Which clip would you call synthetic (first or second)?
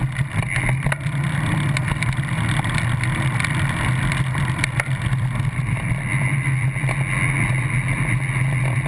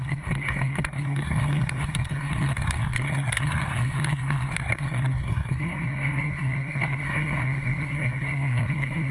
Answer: second